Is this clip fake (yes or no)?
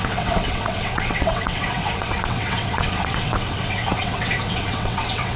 yes